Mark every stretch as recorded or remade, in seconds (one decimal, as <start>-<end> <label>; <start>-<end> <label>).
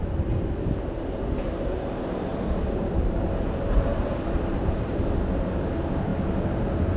0.0-2.3 recorded; 2.3-4.9 remade; 4.9-7.0 recorded